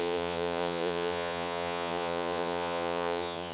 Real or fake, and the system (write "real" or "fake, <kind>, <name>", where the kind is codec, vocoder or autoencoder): fake, vocoder, Vocos